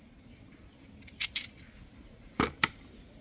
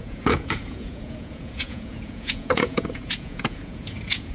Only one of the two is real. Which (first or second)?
first